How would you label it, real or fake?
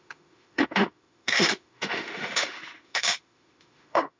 fake